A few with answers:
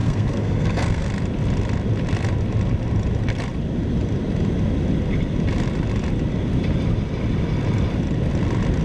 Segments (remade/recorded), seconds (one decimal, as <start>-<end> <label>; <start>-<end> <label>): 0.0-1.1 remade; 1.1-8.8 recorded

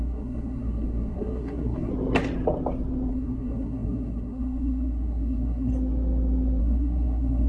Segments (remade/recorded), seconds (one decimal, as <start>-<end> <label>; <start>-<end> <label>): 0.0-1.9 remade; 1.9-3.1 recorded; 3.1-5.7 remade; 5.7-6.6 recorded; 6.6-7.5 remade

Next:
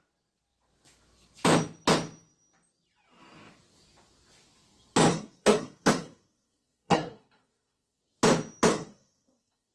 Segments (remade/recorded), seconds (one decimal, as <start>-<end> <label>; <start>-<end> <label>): 0.0-5.1 recorded; 5.1-8.0 remade; 8.0-8.7 recorded; 8.7-9.7 remade